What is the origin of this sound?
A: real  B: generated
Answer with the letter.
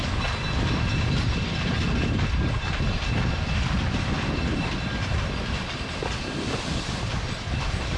B